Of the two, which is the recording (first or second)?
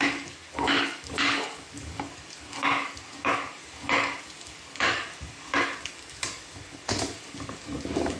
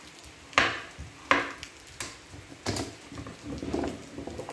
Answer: second